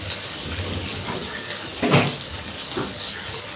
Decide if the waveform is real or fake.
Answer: fake